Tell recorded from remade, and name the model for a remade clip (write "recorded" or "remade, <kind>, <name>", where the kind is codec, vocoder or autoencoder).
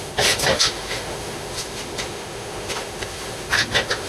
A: remade, autoencoder, DAC-VAE